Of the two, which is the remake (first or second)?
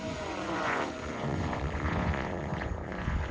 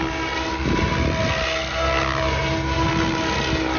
first